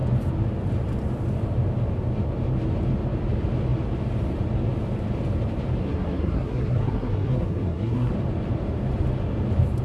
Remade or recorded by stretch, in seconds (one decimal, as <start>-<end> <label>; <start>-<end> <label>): 0.0-5.8 recorded; 5.8-8.1 remade; 8.1-9.8 recorded

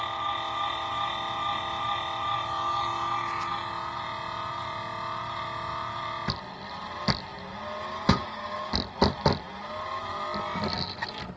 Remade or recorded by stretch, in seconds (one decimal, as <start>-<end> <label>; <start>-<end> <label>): 0.0-7.9 recorded; 7.9-8.7 remade; 8.7-11.4 recorded

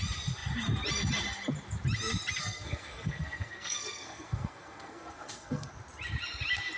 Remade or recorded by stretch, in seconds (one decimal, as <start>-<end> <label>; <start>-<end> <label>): 0.0-2.4 recorded; 2.4-5.7 remade; 5.7-6.8 recorded

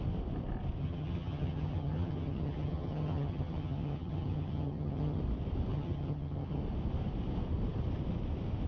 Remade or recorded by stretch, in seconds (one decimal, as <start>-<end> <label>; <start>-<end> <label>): 0.0-0.8 recorded; 0.8-5.2 remade; 5.2-5.7 recorded; 5.7-6.6 remade; 6.6-8.7 recorded

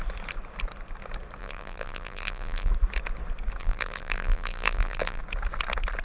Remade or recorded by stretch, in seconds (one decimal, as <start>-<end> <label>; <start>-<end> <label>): 0.0-1.4 recorded; 1.4-2.7 remade; 2.7-3.6 recorded; 3.6-5.2 remade; 5.2-6.0 recorded

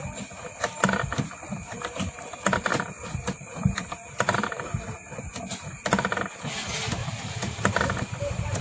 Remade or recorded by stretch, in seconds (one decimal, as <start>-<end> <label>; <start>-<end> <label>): 0.0-1.5 recorded; 1.5-2.2 remade; 2.2-2.7 recorded; 2.7-5.2 remade; 5.2-7.0 recorded; 7.0-8.6 remade